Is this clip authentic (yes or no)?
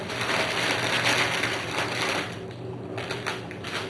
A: yes